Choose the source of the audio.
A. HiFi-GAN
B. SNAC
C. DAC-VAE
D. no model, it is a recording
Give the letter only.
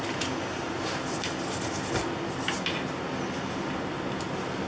D